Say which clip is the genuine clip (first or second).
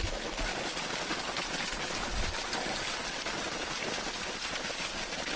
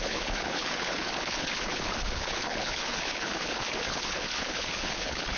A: first